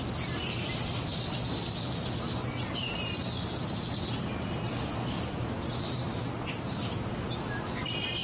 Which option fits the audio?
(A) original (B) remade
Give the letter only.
B